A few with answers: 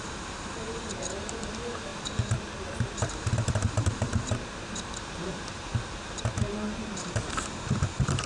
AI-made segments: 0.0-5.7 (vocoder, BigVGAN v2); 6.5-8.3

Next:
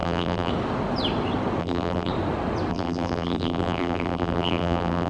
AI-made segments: 0.0-0.5 (vocoder, BigVGAN v2); 1.6-2.1; 2.7-5.1

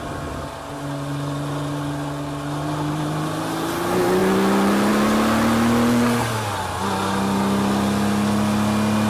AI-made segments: none

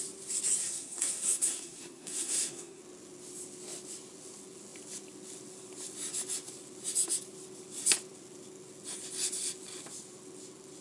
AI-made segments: 0.6-2.8 (codec, SNAC)